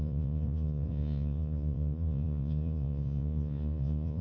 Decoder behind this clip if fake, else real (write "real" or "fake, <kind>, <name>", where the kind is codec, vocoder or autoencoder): fake, vocoder, Vocos